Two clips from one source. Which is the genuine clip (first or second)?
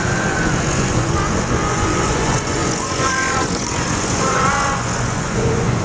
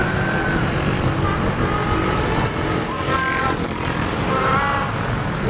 second